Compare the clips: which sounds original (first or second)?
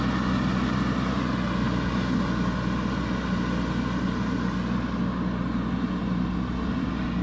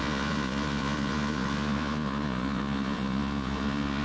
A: first